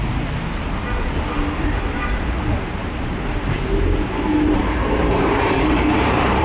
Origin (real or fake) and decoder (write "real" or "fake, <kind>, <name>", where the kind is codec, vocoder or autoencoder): fake, vocoder, BigVGAN v2